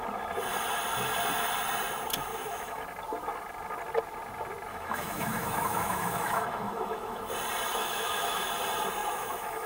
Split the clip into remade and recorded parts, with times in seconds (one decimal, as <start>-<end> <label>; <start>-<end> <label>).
0.0-2.3 recorded; 2.3-2.8 remade; 2.8-4.7 recorded; 4.7-7.2 remade; 7.2-7.7 recorded; 7.7-8.4 remade; 8.4-9.0 recorded; 9.0-9.7 remade

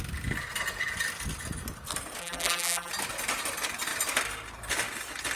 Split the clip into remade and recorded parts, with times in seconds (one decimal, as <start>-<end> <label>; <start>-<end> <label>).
0.0-2.2 recorded; 2.2-2.9 remade; 2.9-5.4 recorded

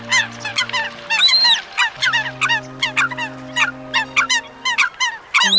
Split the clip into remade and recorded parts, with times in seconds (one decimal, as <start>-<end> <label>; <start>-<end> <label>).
0.0-5.6 recorded

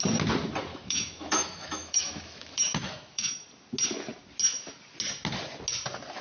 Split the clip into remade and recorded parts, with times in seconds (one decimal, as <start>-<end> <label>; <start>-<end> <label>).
0.0-0.7 recorded; 0.7-3.3 remade; 3.3-6.2 recorded

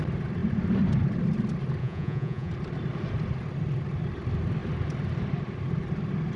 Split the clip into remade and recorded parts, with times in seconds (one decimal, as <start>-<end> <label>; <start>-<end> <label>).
0.0-1.8 recorded; 1.8-2.5 remade; 2.5-6.4 recorded